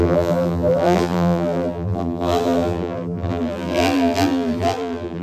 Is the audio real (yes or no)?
no